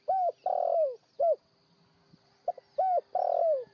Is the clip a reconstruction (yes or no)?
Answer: no